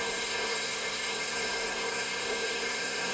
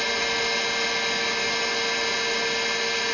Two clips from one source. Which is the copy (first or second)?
first